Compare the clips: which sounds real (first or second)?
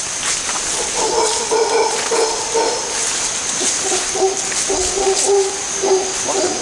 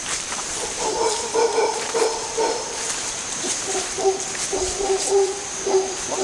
first